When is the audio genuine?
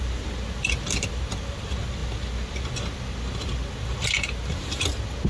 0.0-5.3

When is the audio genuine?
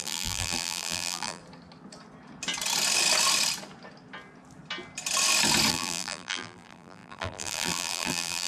1.4-5.7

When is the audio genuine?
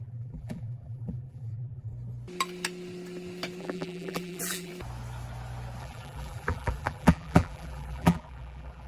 1.9-3.6; 4.7-5.8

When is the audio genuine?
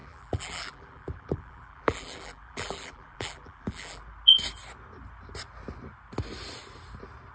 4.0-7.3